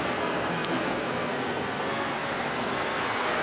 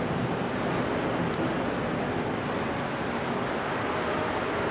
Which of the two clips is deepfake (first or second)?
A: first